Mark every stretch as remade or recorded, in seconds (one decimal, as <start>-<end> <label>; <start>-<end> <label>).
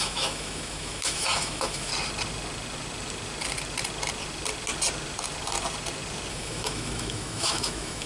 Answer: 0.0-1.9 remade; 1.9-6.3 recorded; 6.3-8.1 remade